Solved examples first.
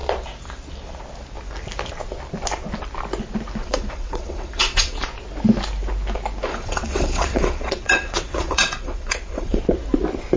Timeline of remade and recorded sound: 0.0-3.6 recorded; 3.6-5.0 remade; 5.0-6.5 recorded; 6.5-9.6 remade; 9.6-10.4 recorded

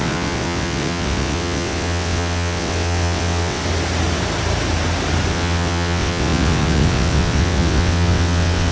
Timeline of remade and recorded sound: 0.0-3.6 remade; 3.6-5.3 recorded; 5.3-8.7 remade

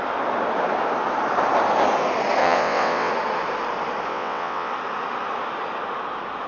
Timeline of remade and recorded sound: 0.0-2.4 recorded; 2.4-3.1 remade; 3.1-4.1 recorded; 4.1-4.7 remade; 4.7-6.5 recorded

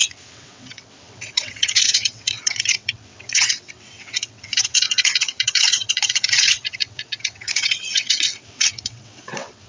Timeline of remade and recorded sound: 0.0-9.7 remade

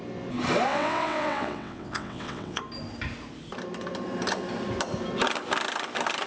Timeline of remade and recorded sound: 0.0-0.7 recorded; 0.7-2.6 remade; 2.6-6.3 recorded

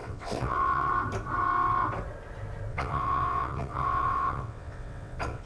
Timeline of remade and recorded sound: 0.0-0.9 remade; 0.9-2.7 recorded; 2.7-5.5 remade